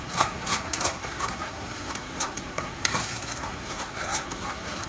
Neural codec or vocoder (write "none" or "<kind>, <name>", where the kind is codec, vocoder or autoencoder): codec, SNAC